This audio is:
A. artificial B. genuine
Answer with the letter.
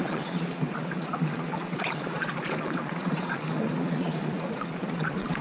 A